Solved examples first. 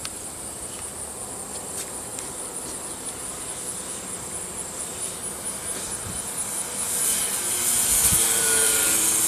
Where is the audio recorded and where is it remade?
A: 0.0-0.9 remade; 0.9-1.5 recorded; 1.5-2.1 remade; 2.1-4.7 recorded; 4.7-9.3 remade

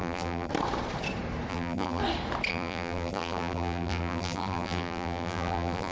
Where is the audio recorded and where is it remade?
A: 0.0-0.5 remade; 0.5-1.5 recorded; 1.5-2.0 remade; 2.0-2.5 recorded; 2.5-5.9 remade

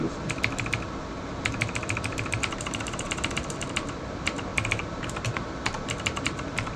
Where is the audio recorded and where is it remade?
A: 0.0-6.8 remade